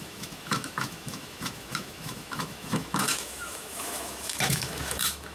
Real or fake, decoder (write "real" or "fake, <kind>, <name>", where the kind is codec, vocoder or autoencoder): fake, autoencoder, DAC-VAE